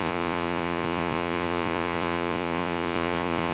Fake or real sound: fake